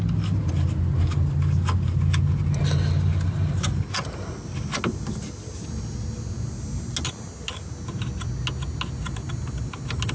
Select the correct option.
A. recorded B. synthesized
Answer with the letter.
A